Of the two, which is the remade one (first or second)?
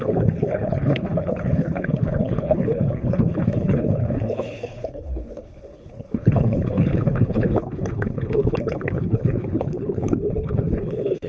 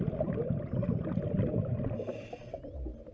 first